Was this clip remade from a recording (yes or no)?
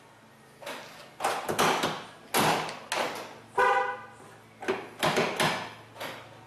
no